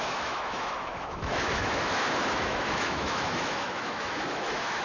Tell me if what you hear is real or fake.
fake